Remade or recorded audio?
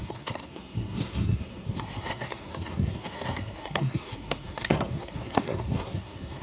remade